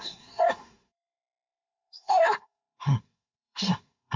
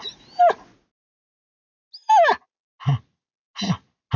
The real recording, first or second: second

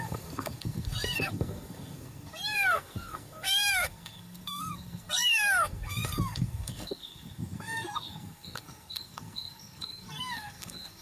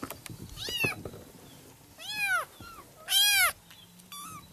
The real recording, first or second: second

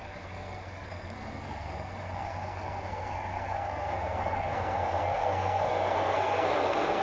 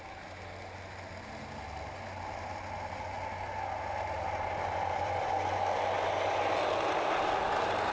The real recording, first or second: second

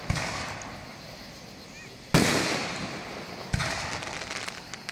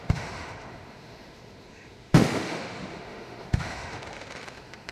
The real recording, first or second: first